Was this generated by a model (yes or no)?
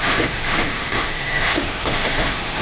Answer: yes